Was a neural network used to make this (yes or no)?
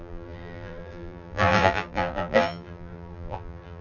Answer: yes